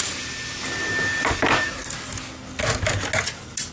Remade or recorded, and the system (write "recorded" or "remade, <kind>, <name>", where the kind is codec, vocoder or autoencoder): recorded